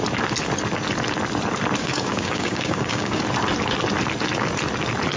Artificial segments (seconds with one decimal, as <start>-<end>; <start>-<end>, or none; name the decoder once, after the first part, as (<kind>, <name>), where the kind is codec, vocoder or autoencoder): 1.8-3.2 (codec, DAC)